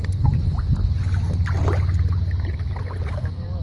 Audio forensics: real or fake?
real